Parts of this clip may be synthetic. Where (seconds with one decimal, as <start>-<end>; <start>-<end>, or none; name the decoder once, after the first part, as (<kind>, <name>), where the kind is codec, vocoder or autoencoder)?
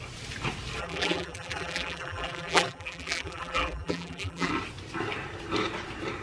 0.8-4.5 (vocoder, BigVGAN v2)